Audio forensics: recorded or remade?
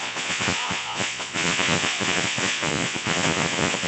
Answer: remade